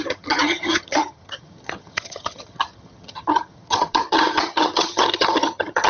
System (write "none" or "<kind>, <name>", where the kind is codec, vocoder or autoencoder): vocoder, HiFi-GAN